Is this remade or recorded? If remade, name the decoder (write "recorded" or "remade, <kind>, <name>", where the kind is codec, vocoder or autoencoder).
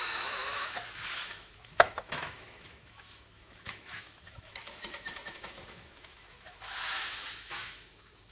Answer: remade, autoencoder, DAC-VAE